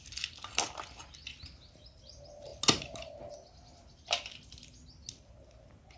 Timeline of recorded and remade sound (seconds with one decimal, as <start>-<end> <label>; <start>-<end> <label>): 0.0-6.0 recorded